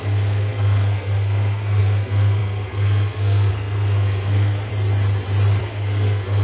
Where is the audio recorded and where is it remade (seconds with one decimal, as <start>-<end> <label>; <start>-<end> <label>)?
0.0-4.7 remade; 4.7-5.6 recorded; 5.6-6.4 remade

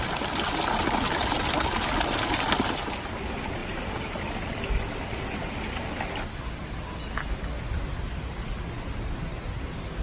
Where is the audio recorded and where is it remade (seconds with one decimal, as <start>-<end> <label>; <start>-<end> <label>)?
0.0-10.0 recorded

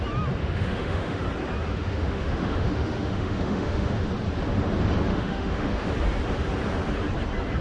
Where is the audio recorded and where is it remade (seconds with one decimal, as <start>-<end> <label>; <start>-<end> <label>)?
0.0-0.4 recorded; 0.4-1.2 remade; 1.2-1.7 recorded; 1.7-4.1 remade; 4.1-5.1 recorded; 5.1-5.9 remade; 5.9-7.6 recorded

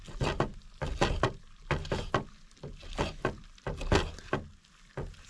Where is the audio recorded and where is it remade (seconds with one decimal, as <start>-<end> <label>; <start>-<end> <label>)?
0.0-5.3 recorded